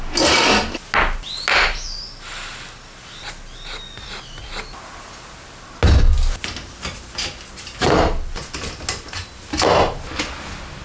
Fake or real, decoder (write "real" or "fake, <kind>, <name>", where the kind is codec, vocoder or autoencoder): real